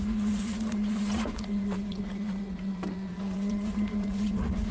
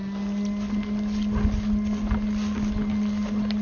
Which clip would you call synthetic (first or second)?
first